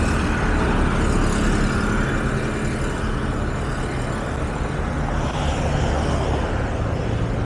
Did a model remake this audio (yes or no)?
no